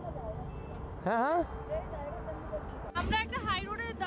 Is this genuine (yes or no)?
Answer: yes